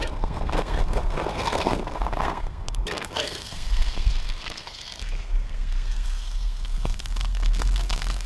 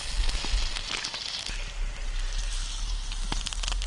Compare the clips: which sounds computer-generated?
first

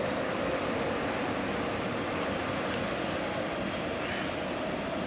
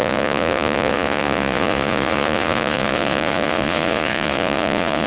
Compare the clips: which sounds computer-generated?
second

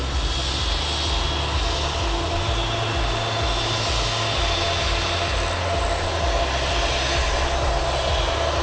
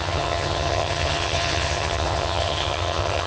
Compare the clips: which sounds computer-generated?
second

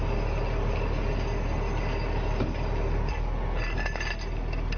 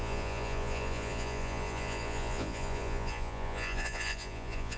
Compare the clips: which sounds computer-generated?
second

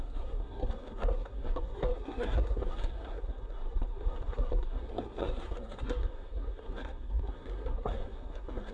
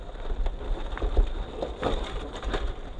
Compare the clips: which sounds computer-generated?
first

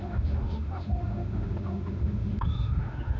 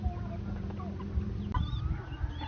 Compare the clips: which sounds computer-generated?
first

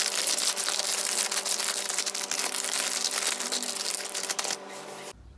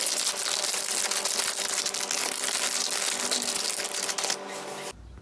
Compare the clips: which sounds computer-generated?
first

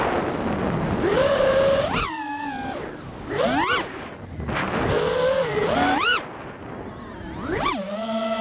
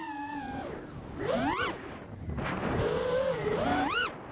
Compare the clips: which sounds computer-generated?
second